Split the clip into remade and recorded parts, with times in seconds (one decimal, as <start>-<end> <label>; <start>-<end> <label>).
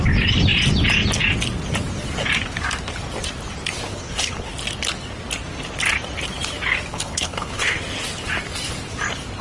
0.0-3.9 recorded; 3.9-4.5 remade; 4.5-6.9 recorded; 6.9-7.8 remade; 7.8-9.4 recorded